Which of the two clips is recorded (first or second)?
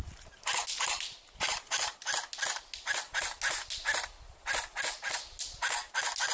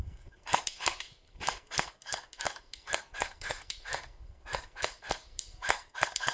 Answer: first